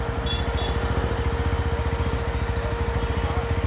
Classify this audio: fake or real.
real